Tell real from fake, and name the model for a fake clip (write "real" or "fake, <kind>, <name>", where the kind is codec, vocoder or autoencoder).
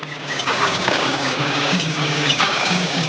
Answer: fake, codec, DAC